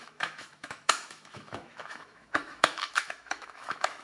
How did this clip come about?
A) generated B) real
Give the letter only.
A